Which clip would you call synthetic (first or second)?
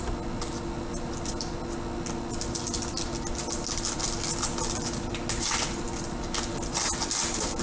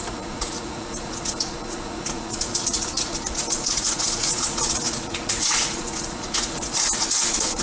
second